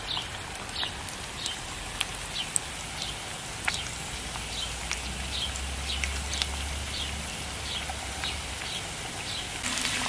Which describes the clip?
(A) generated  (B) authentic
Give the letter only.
A